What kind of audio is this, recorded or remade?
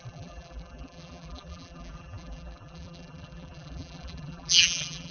remade